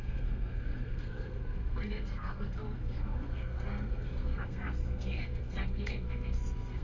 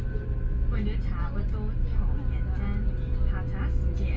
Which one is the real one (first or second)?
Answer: second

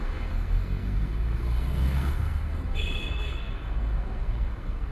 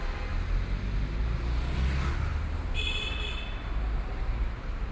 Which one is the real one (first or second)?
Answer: second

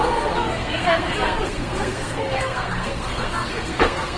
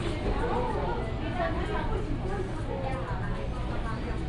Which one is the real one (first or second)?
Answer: second